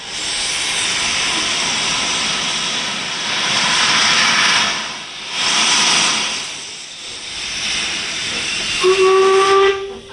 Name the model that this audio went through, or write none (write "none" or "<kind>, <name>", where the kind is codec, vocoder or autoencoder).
none